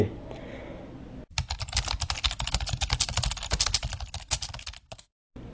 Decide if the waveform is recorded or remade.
recorded